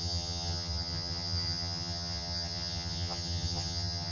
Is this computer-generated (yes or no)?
yes